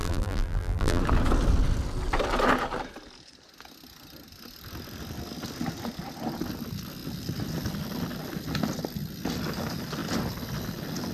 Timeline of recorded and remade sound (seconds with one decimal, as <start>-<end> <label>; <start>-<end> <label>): 0.0-1.0 remade; 1.0-11.1 recorded